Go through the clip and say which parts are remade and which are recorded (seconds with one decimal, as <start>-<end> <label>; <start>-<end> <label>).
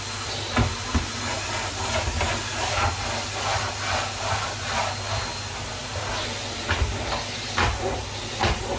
0.0-8.8 recorded